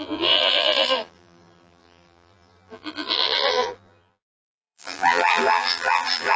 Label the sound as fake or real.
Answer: fake